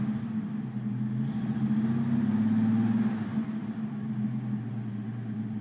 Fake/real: real